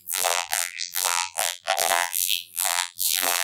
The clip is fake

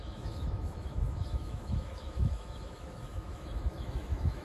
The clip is fake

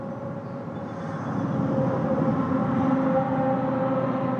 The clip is real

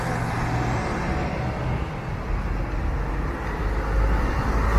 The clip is real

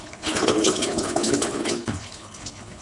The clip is fake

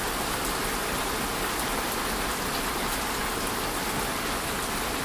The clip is real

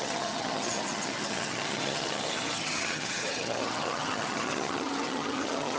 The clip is fake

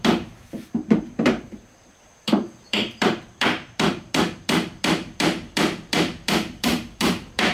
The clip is fake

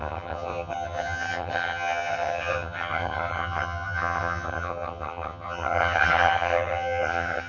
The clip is fake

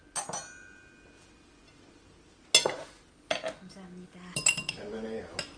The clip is real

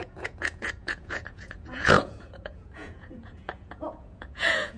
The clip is fake